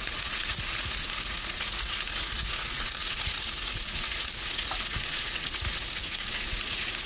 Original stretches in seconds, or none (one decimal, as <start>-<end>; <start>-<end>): none

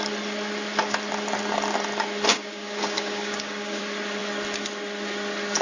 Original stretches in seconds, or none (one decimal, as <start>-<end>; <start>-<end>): 0.0-2.3; 3.8-5.6

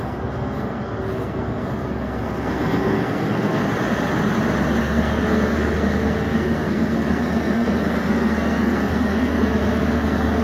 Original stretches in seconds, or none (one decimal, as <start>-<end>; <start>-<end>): 3.6-4.8

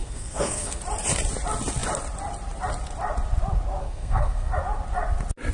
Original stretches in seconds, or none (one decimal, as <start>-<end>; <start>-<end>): 0.8-3.8; 4.5-5.5

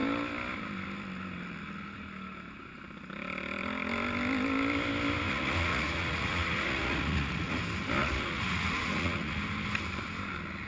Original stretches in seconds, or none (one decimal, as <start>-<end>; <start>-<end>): 0.0-5.3; 7.6-8.0; 9.4-10.7